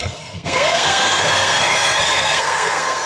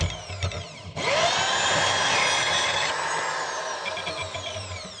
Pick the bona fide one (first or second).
second